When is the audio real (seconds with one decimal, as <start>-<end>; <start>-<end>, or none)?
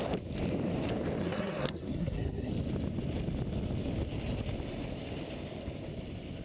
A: 0.0-1.2; 2.5-6.4